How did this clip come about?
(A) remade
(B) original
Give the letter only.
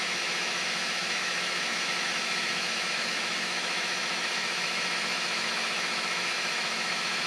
A